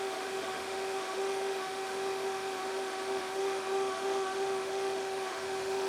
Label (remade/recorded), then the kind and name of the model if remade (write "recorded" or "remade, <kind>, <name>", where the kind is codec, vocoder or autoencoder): remade, autoencoder, DAC-VAE